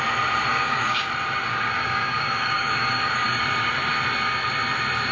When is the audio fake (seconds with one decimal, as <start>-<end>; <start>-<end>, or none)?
0.5-1.1; 1.5-3.4